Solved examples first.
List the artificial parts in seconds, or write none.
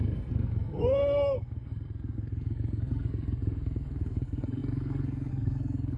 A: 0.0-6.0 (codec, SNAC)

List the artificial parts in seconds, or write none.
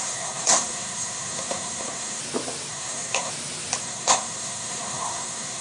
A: 0.0-2.2 (codec, SNAC); 2.7-3.3; 3.8-5.6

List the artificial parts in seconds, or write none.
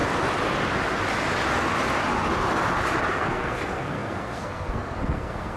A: 3.1-5.6 (codec, SNAC)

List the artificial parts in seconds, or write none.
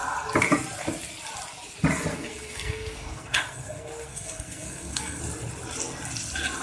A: 2.1-5.2 (codec, SNAC)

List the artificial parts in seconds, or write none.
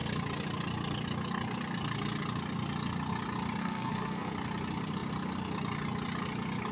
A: 3.6-4.3 (codec, SNAC)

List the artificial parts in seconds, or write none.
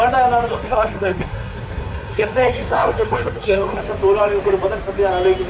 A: 0.5-3.8 (codec, SNAC)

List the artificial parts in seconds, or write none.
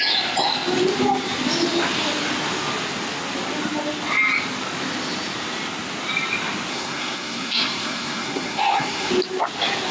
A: 6.7-9.1 (codec, SNAC)